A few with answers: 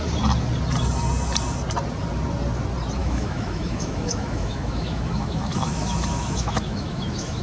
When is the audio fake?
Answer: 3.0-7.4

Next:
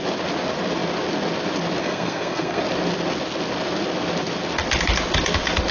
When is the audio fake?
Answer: 1.8-2.6

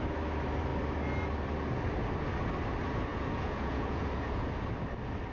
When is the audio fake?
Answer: 3.1-4.4

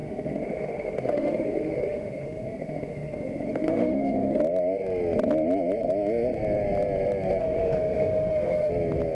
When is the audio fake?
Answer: 0.0-4.4; 7.4-8.7

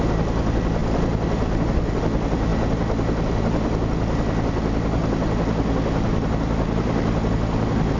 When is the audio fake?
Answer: none